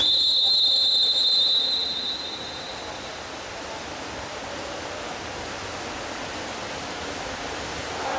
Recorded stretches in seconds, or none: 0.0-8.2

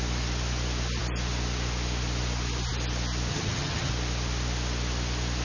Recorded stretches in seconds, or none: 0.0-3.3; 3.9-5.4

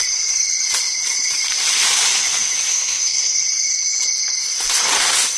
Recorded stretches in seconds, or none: 0.0-2.7; 3.3-5.4

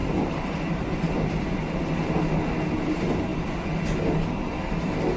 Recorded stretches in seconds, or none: 2.2-3.3; 4.0-5.2